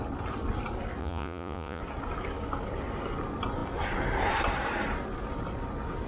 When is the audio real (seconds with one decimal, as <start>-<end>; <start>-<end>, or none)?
0.0-1.0; 1.8-6.1